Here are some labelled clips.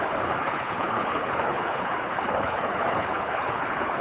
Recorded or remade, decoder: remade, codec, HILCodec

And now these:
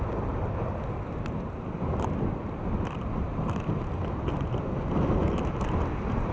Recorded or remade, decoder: recorded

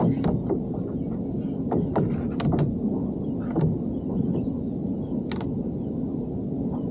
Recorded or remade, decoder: recorded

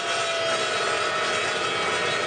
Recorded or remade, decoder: recorded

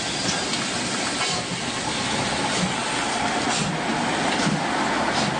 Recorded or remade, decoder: recorded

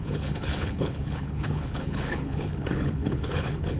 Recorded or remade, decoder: remade, codec, HILCodec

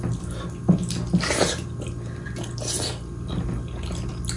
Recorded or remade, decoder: recorded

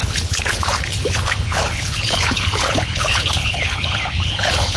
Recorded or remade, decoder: remade, codec, HILCodec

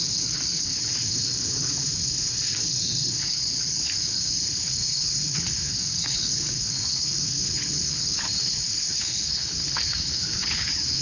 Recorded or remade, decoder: remade, codec, HILCodec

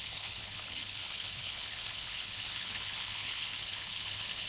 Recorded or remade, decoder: remade, codec, HILCodec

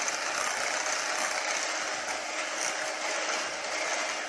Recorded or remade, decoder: recorded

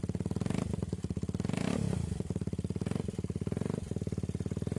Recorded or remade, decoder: recorded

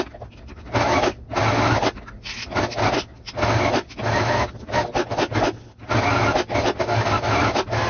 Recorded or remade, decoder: recorded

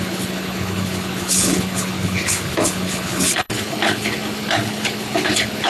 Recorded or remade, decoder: remade, codec, HILCodec